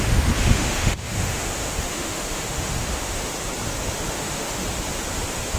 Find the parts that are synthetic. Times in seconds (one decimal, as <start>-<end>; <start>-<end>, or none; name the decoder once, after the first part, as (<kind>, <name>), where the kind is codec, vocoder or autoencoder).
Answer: 0.0-3.3 (autoencoder, DAC-VAE); 4.1-4.6